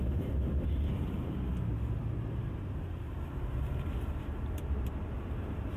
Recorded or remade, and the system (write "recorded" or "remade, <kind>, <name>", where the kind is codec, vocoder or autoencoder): remade, vocoder, BigVGAN v2